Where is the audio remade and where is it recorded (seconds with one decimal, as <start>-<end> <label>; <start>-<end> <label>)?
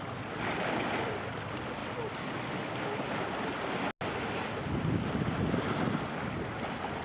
0.0-7.0 recorded